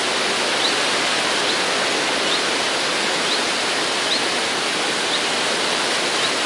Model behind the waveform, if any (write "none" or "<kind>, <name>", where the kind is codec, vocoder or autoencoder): none